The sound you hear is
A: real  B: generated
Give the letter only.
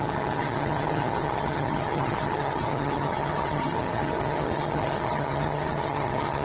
B